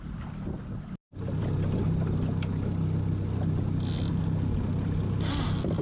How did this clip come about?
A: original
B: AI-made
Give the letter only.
A